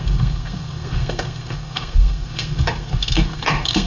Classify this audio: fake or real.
fake